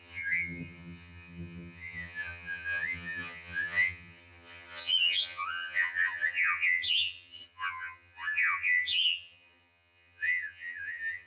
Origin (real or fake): fake